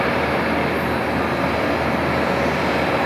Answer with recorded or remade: recorded